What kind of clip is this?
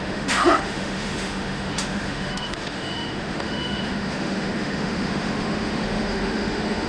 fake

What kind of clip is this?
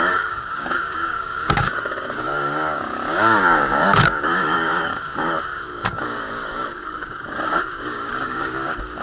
fake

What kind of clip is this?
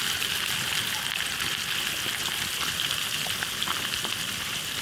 real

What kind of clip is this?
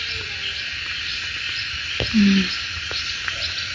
real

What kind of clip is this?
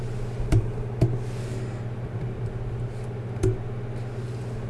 real